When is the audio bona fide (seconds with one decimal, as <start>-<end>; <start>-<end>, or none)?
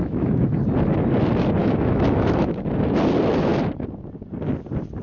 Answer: 0.6-1.6; 2.7-5.0